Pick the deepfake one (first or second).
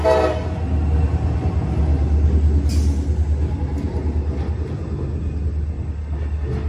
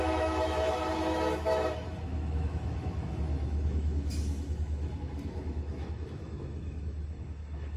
second